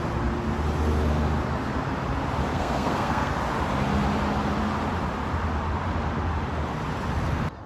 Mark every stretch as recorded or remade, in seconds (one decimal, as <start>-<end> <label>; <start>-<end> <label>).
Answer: 0.0-2.5 recorded; 2.5-3.3 remade; 3.3-7.7 recorded